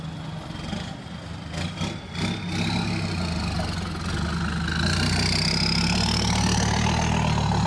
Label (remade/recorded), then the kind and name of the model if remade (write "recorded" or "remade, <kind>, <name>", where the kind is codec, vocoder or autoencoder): recorded